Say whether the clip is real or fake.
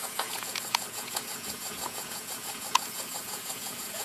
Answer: fake